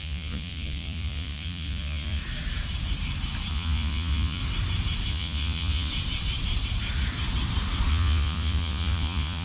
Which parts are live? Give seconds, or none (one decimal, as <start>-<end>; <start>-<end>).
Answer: 2.2-3.5; 4.4-5.1; 5.9-7.9